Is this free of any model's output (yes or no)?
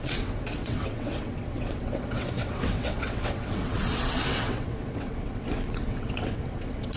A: no